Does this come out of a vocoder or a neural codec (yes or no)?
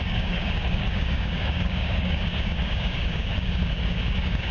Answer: yes